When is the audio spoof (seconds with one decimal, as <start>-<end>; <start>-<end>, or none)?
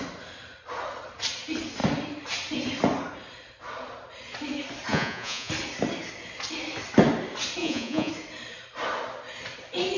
4.9-5.5; 7.6-8.1